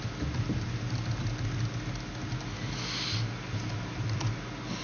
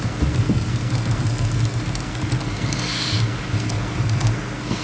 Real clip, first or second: first